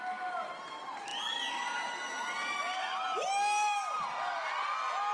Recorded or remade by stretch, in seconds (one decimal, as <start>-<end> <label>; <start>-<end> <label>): 0.0-5.1 recorded